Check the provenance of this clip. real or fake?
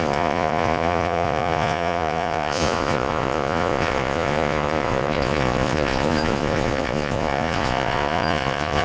fake